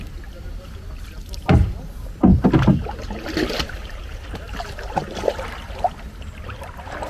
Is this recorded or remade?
recorded